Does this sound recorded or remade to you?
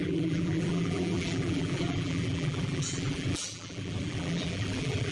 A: remade